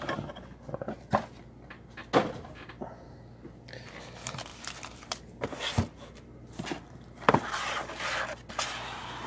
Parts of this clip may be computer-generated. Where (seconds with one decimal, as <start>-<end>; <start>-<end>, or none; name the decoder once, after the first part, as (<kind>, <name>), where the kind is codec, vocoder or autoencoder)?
none